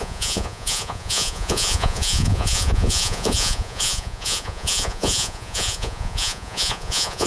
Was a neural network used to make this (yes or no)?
yes